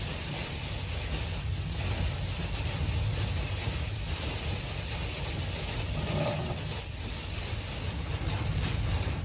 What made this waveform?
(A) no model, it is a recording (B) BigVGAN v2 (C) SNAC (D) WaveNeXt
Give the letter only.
A